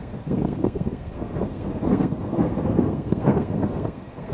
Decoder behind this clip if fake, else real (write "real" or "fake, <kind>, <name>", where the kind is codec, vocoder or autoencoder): fake, codec, SNAC